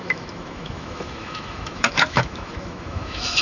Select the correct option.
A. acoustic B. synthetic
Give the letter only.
B